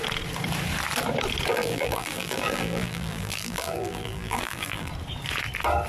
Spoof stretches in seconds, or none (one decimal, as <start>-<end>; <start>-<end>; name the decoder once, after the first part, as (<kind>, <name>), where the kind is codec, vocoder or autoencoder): 1.5-4.9 (vocoder, BigVGAN v2)